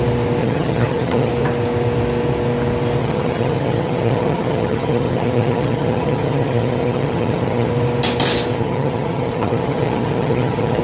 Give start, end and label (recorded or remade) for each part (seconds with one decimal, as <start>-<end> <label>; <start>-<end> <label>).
0.0-0.4 recorded; 0.4-1.3 remade; 1.3-3.0 recorded; 3.0-7.7 remade; 7.7-8.5 recorded; 8.5-10.8 remade